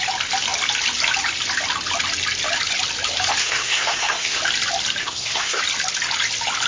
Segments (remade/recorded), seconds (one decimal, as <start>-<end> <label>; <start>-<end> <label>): 0.0-3.4 recorded; 3.4-4.4 remade; 4.4-5.0 recorded; 5.0-5.6 remade; 5.6-6.7 recorded